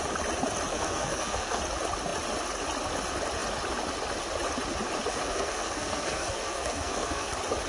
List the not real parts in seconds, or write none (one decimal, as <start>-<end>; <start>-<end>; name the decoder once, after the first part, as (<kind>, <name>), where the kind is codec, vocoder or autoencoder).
0.7-1.6 (codec, SNAC); 5.1-7.3